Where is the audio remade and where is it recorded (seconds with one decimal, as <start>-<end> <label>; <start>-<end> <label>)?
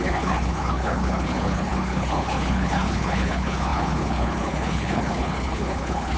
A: 0.0-6.2 remade